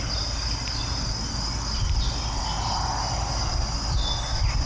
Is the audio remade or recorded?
recorded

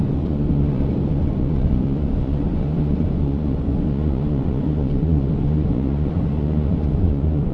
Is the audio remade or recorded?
remade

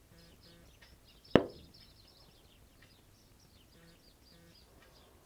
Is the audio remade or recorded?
recorded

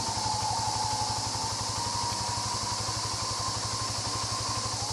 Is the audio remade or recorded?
recorded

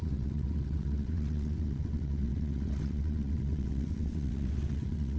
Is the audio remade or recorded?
remade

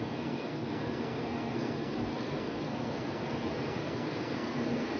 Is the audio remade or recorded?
remade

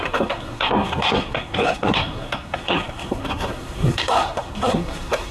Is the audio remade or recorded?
remade